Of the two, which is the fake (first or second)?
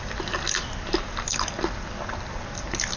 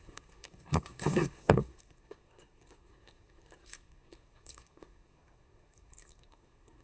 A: second